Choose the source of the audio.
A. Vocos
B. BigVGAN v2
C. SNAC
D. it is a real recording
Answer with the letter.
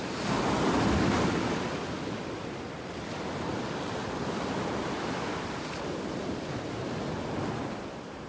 D